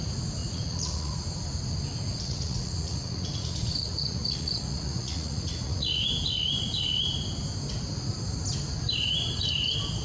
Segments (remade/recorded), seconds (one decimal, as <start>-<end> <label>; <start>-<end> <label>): 0.0-0.4 recorded; 0.4-1.2 remade; 1.2-2.1 recorded; 2.1-6.0 remade; 6.0-10.0 recorded